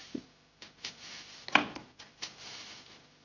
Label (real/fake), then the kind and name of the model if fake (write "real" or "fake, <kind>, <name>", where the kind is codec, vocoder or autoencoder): real